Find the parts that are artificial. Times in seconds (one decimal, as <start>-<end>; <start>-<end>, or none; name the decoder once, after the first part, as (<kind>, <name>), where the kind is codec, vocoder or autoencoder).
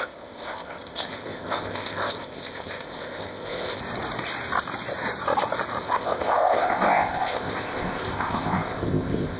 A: 0.0-3.8 (codec, ZipCodec); 5.8-9.4